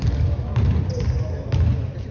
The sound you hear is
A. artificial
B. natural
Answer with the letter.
B